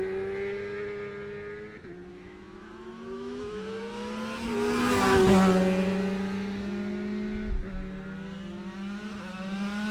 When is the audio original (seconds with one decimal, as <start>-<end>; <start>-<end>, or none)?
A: 0.0-2.1; 3.8-9.9

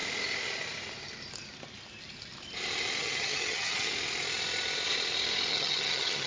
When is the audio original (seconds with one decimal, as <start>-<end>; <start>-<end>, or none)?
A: 0.0-3.0; 3.9-5.5

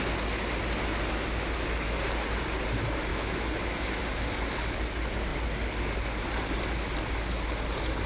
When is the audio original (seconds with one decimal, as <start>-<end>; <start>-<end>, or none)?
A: 0.0-3.1; 4.0-8.1

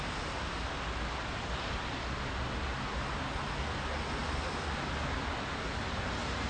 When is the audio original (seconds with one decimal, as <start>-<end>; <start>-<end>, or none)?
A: 0.0-6.5